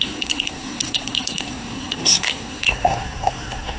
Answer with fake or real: fake